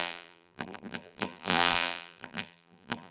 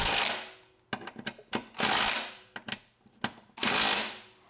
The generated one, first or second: first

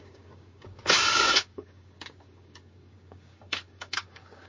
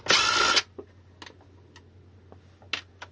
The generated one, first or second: first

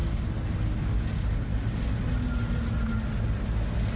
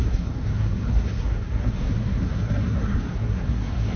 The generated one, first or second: second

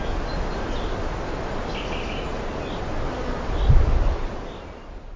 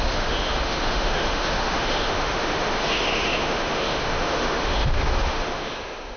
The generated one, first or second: second